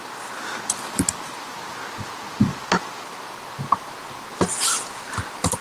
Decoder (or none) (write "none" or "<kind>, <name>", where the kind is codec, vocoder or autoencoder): none